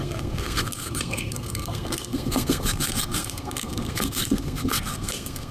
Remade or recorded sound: remade